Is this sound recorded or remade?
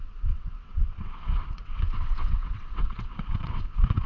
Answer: remade